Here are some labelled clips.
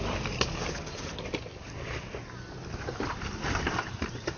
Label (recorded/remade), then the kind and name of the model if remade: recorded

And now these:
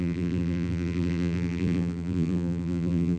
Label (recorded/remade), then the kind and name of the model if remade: remade, vocoder, BigVGAN v2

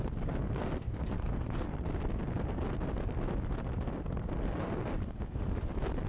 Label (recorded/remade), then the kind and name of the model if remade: recorded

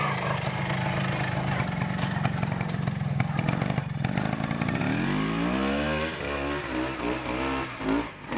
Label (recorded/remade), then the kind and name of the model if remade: recorded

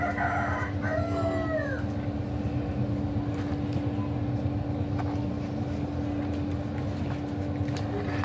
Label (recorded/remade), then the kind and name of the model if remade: recorded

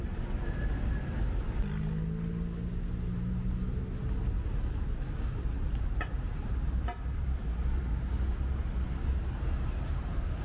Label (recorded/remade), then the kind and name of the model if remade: recorded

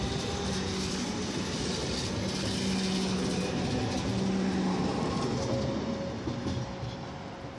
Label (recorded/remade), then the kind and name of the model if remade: recorded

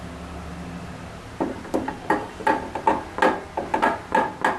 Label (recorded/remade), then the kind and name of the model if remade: recorded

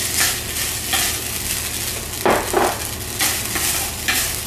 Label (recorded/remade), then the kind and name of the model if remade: recorded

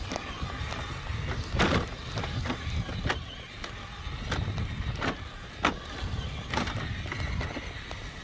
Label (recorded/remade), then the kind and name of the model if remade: recorded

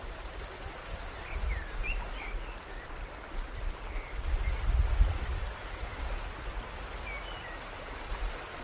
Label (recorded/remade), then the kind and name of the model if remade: recorded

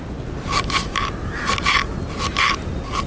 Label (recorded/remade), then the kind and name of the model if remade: recorded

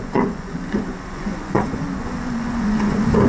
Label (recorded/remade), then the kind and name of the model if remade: remade, vocoder, Vocos